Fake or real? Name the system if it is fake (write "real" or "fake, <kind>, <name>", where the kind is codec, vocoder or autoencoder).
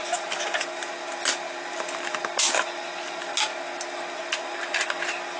real